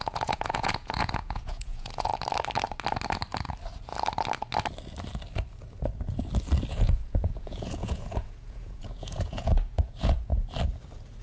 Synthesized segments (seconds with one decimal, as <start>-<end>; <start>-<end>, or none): 0.0-2.1; 6.7-10.3